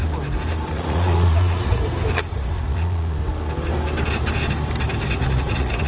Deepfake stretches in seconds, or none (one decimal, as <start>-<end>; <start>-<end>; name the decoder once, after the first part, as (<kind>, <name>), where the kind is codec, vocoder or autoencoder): 0.7-1.7 (vocoder, Vocos); 2.3-3.2; 5.1-5.9